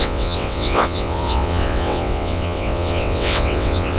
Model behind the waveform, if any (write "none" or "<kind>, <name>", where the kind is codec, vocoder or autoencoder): vocoder, WaveNeXt